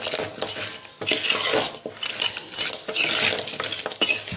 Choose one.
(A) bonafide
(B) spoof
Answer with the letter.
A